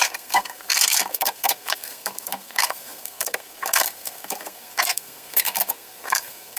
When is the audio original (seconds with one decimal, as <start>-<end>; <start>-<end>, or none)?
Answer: none